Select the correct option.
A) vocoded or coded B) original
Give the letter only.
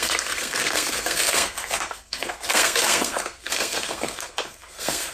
A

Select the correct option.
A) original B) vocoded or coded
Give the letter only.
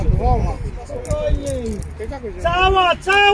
A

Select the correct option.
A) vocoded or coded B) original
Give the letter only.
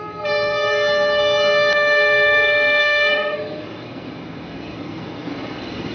A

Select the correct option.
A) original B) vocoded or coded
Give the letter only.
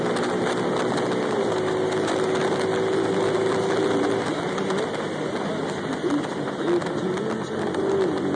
A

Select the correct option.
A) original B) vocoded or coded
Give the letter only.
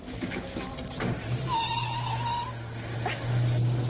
A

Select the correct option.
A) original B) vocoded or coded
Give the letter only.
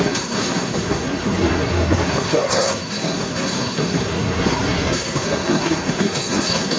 B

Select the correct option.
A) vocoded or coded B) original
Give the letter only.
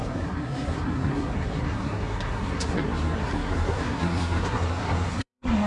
A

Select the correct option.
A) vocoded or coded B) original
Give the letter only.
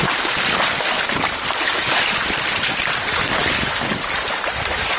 B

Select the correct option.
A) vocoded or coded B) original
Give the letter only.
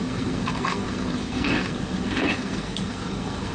A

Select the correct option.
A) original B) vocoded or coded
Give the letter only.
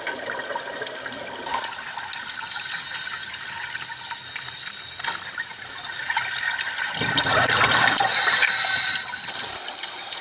A